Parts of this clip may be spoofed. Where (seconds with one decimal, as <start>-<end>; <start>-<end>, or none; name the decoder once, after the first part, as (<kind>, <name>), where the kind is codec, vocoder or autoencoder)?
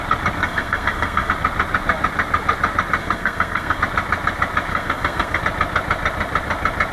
0.4-1.3 (codec, SNAC); 3.0-3.8; 4.7-5.4